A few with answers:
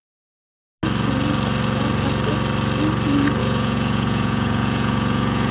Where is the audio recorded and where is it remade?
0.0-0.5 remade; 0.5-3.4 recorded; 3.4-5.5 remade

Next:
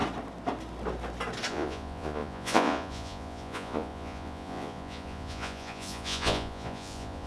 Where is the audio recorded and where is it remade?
0.0-1.5 recorded; 1.5-7.3 remade

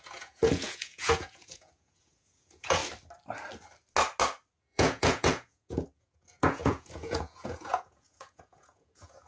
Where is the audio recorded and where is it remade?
0.0-2.8 remade; 2.8-4.6 recorded; 4.6-9.3 remade